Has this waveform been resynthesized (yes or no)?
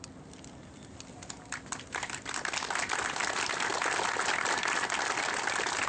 no